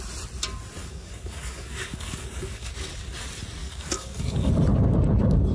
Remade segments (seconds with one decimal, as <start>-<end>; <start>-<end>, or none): 0.8-2.7; 3.6-4.5